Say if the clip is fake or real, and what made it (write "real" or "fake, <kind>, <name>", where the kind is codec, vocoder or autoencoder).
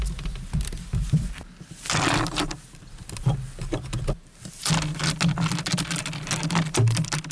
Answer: real